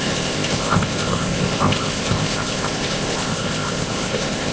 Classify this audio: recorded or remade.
remade